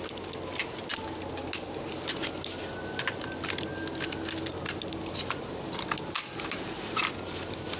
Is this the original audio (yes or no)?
yes